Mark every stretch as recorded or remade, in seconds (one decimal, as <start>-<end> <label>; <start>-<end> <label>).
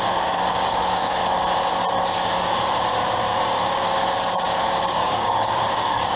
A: 0.0-1.2 remade; 1.2-4.9 recorded; 4.9-6.2 remade